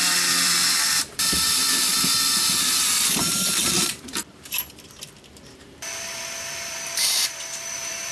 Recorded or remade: remade